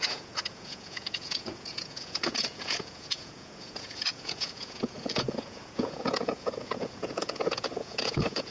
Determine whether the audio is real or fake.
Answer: fake